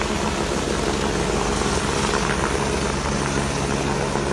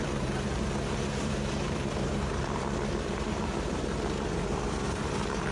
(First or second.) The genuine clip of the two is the first